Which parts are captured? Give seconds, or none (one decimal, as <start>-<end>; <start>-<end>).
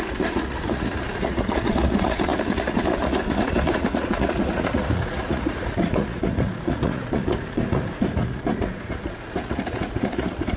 none